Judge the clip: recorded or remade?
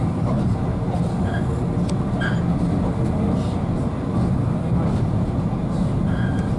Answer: recorded